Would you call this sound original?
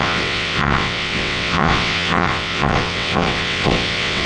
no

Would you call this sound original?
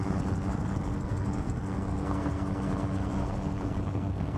no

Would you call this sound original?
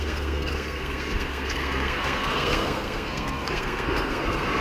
no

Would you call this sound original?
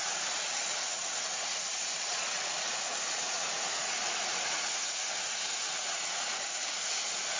no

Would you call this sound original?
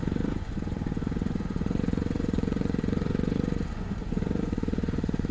no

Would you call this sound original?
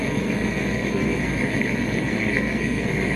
no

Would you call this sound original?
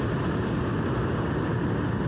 yes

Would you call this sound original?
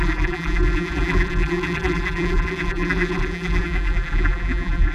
no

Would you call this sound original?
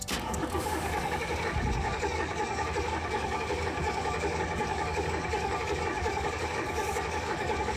no